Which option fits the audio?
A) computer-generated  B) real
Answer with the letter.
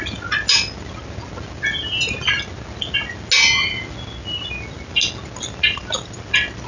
B